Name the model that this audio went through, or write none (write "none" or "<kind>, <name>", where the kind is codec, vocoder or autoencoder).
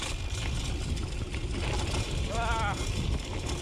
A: none